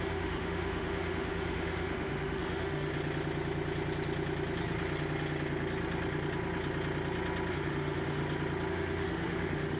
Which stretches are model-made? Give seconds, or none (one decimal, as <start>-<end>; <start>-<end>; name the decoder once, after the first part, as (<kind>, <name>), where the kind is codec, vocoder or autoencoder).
0.0-2.9 (autoencoder, DAC-VAE); 7.5-8.2; 8.7-9.8